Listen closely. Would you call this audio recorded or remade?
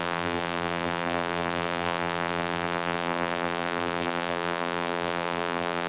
remade